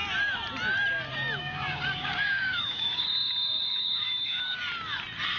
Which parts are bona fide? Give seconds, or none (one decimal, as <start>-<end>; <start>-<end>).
0.0-1.4; 4.6-5.4